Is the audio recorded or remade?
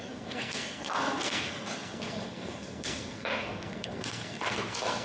remade